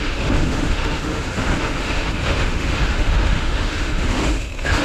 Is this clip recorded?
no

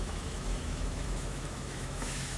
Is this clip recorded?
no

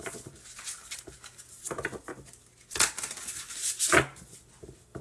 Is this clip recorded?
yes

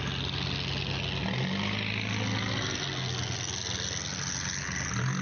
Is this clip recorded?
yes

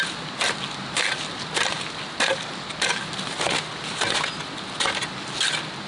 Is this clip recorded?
yes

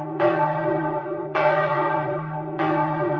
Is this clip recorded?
no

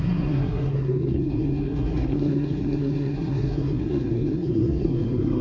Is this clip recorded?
no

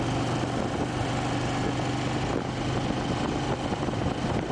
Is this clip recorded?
yes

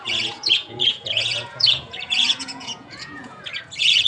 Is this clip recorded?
no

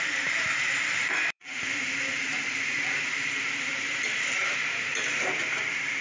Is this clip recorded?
no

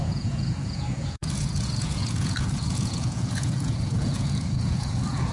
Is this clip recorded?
no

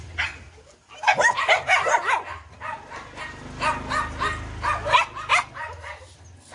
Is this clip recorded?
yes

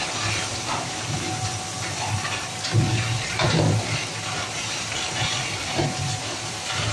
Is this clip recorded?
yes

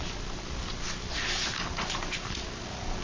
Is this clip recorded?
yes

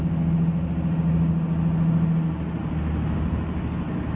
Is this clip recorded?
yes